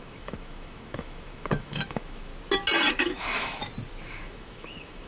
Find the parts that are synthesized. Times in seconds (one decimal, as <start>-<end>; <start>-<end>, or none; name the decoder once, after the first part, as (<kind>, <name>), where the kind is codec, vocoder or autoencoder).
0.0-2.3 (autoencoder, DAC-VAE); 2.9-3.6; 4.1-5.1